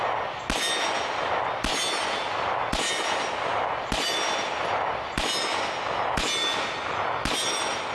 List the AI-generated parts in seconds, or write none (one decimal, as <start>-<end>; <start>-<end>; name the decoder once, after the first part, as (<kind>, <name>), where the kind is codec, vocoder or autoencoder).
none